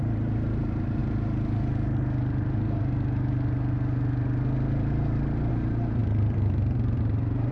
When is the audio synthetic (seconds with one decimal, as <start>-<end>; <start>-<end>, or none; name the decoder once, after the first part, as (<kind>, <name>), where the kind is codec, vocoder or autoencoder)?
0.0-1.0 (vocoder, BigVGAN v2); 5.5-7.5